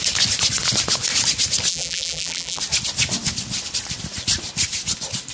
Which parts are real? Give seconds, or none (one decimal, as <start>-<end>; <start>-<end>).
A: 0.0-1.7; 2.6-5.3